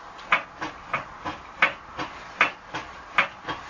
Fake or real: real